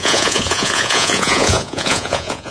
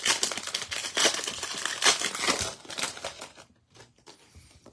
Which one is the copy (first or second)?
first